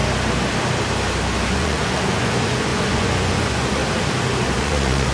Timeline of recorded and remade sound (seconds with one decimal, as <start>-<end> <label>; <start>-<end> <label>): 0.0-1.5 recorded; 1.5-3.8 remade; 3.8-4.6 recorded; 4.6-5.1 remade